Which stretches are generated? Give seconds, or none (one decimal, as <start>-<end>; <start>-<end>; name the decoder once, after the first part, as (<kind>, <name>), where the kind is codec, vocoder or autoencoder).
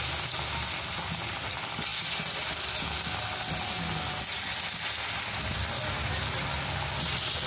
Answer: none